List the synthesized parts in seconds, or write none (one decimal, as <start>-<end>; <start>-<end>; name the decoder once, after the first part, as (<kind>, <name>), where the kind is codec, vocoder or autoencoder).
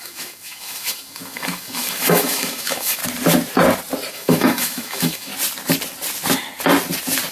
0.0-3.0 (autoencoder, DAC-VAE); 4.1-5.3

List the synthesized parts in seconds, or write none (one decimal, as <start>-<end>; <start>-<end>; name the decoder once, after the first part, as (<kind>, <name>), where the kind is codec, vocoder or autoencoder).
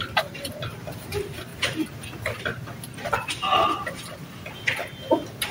none